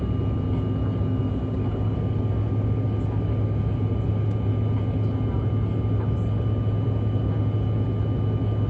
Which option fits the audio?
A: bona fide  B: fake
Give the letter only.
A